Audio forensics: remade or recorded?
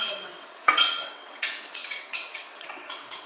remade